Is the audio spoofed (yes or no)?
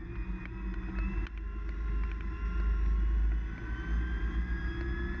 no